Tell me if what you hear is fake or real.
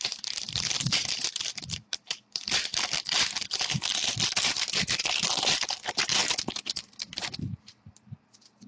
fake